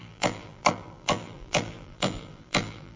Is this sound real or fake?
fake